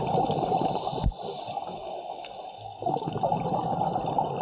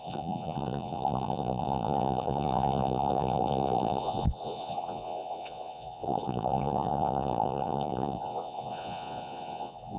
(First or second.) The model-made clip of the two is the second